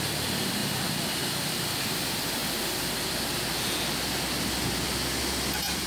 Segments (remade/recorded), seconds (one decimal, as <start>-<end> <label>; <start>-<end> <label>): 0.0-0.6 remade; 0.6-1.8 recorded; 1.8-2.4 remade; 2.4-5.9 recorded